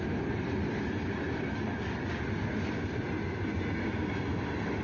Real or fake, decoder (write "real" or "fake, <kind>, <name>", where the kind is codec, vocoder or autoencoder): real